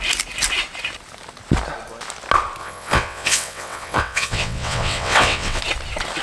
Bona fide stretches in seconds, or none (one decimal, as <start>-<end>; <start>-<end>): 0.0-2.6; 5.6-6.2